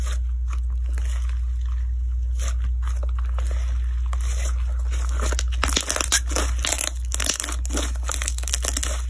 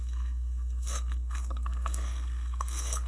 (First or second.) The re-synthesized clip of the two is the second